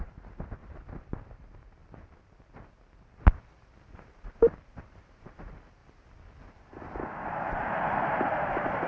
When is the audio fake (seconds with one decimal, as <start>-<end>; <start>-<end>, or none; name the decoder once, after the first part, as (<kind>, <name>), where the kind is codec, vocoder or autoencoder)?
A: 0.0-0.6 (vocoder, BigVGAN v2); 1.1-1.8; 3.9-5.8; 7.3-8.9